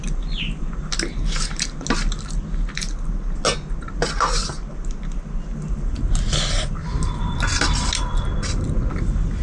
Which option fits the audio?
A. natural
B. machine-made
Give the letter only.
A